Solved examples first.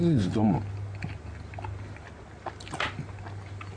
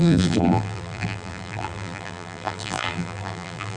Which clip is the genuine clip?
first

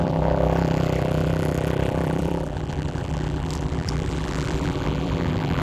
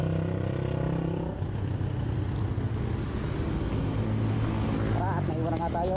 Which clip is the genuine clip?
second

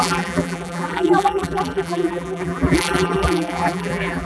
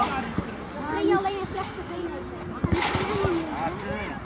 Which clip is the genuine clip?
second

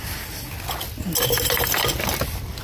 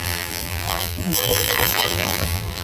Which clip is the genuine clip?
first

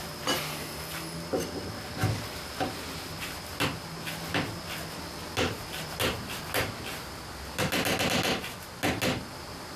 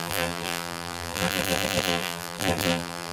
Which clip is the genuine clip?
first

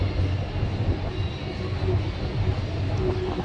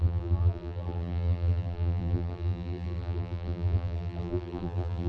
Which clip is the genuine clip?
first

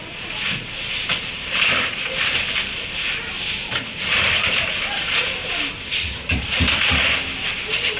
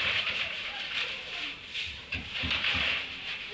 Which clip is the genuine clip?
first